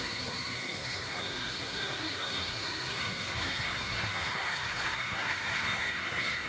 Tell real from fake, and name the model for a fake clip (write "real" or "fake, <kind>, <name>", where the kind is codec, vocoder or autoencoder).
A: fake, codec, SNAC